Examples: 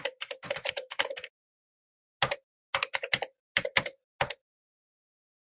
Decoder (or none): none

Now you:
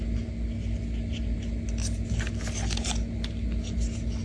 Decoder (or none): none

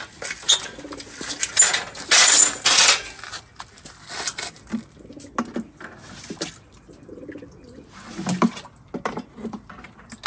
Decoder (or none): none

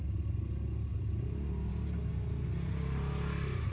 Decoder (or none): none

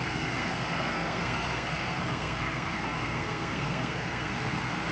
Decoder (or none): codec, SNAC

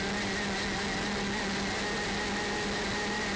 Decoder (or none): none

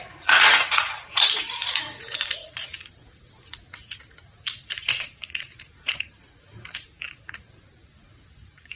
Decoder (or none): vocoder, Vocos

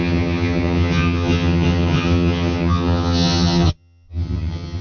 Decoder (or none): vocoder, HiFi-GAN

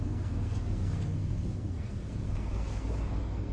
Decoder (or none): codec, SNAC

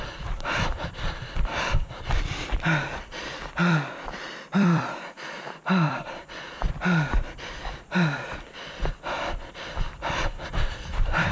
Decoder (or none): vocoder, BigVGAN v2